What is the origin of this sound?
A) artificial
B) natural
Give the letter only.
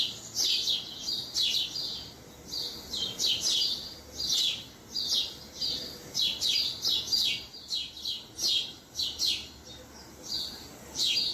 B